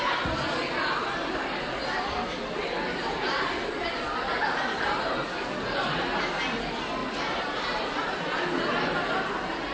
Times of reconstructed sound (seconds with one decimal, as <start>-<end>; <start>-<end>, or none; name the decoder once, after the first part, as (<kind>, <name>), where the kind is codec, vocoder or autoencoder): none